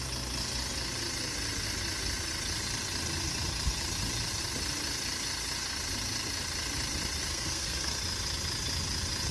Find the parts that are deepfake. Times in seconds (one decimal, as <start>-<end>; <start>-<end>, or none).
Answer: 7.3-8.0